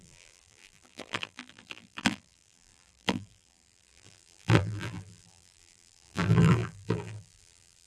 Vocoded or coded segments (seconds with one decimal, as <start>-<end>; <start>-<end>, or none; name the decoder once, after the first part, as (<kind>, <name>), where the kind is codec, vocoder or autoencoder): 0.0-7.9 (vocoder, BigVGAN v2)